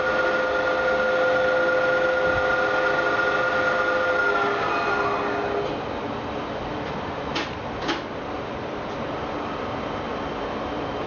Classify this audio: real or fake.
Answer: real